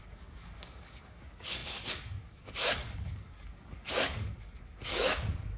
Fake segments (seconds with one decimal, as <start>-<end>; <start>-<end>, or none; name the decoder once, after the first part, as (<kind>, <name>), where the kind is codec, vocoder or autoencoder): 0.0-5.6 (codec, DAC)